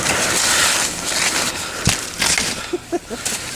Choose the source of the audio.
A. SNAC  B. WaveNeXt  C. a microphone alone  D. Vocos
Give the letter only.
C